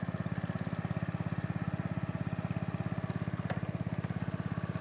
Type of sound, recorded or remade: recorded